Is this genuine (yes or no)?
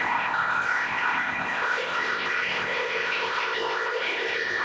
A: no